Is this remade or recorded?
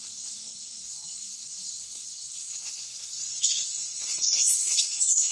remade